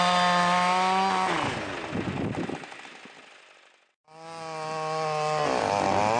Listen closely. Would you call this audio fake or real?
real